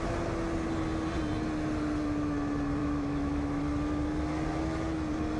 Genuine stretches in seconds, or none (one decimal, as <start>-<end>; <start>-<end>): 0.0-2.8; 3.6-5.4